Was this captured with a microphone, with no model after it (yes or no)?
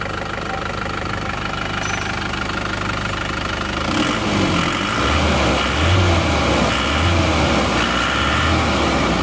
yes